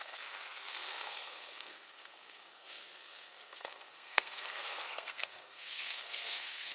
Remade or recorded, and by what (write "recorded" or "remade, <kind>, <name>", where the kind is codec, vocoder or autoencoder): remade, codec, SNAC